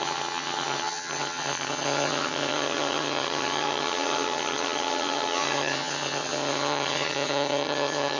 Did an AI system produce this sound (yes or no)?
yes